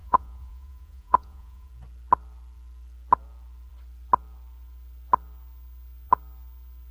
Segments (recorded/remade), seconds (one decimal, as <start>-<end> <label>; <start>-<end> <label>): 0.0-1.7 remade; 1.7-6.9 recorded